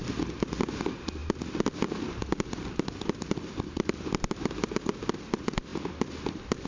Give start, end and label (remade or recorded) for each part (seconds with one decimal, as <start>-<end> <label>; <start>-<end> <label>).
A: 0.0-6.7 recorded